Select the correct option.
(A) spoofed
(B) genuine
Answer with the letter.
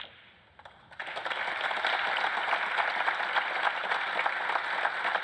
B